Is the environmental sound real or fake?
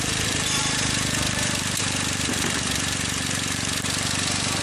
fake